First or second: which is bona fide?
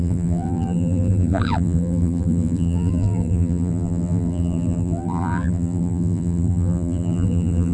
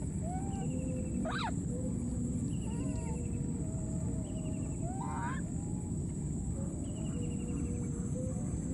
second